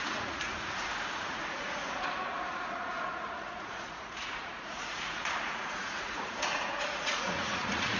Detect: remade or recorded remade